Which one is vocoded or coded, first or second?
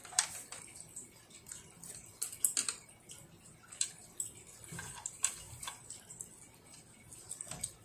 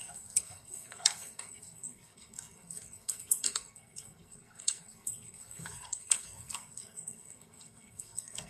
second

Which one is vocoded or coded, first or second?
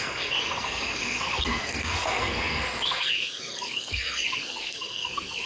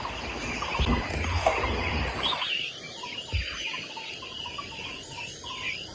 first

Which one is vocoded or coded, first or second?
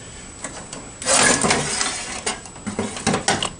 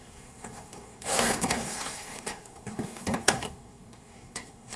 second